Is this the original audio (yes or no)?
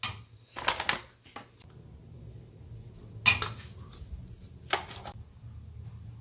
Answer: yes